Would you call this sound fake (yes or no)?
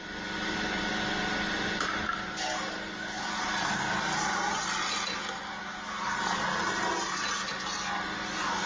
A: no